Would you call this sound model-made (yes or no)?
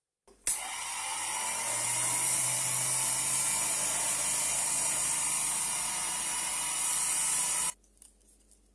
no